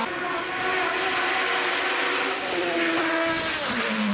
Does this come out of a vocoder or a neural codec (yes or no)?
no